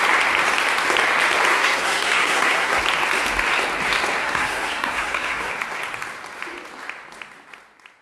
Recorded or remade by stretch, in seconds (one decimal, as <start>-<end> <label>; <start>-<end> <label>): 0.0-1.5 recorded; 1.5-2.8 remade; 2.8-4.2 recorded; 4.2-5.5 remade; 5.5-8.0 recorded